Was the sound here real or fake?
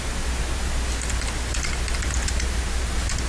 real